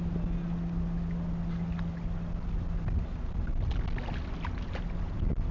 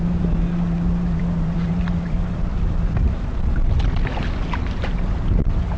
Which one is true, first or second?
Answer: first